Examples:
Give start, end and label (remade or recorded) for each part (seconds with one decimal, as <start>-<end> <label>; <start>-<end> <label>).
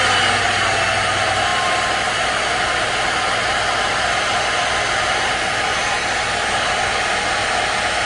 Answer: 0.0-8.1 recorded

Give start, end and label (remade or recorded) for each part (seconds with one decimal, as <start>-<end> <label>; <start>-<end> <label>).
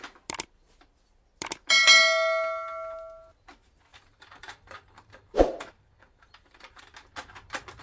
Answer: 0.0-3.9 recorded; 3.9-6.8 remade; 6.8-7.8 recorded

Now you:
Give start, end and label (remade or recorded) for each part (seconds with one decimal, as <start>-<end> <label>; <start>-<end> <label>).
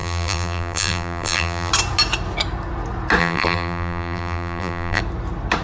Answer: 0.0-1.7 remade; 1.7-3.2 recorded; 3.2-5.0 remade; 5.0-5.6 recorded